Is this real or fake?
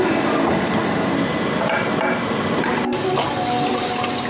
real